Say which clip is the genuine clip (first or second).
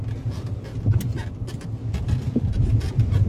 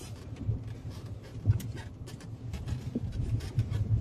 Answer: first